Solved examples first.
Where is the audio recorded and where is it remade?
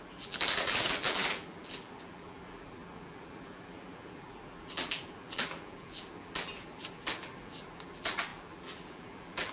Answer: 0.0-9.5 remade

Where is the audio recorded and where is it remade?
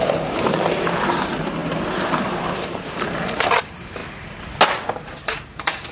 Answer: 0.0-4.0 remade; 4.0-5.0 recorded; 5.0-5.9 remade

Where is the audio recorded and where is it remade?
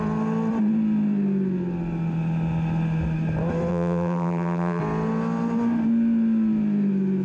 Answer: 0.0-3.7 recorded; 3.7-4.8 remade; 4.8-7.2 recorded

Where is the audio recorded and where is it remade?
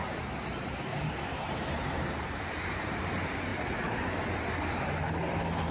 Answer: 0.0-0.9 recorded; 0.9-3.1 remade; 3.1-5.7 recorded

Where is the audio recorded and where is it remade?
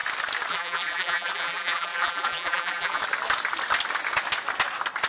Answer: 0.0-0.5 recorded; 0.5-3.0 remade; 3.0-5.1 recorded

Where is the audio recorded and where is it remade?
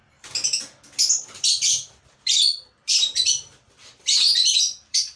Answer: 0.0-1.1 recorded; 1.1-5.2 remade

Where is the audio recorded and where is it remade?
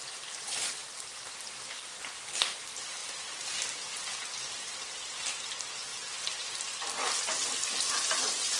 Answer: 0.0-3.0 remade; 3.0-4.4 recorded; 4.4-8.6 remade